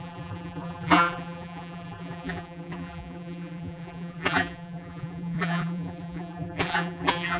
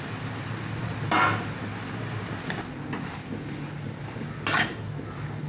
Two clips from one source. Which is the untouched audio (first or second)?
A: second